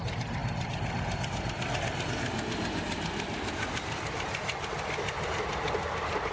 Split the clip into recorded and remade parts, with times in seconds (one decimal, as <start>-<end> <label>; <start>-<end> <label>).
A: 0.0-6.3 recorded